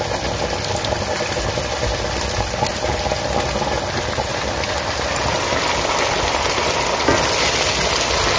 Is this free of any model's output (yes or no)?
yes